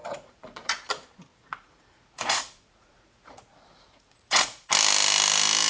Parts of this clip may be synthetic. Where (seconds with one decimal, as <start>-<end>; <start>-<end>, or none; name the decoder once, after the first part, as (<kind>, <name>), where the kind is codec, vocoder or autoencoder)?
0.0-0.8 (vocoder, Vocos); 1.3-4.7